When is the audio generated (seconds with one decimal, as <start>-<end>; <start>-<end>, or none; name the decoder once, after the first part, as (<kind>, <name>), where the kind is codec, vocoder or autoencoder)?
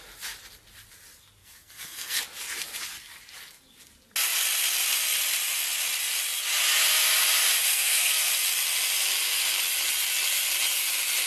1.4-2.2 (codec, SNAC); 7.7-8.3